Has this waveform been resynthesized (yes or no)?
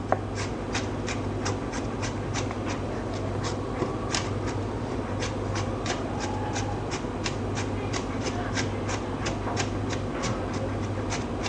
no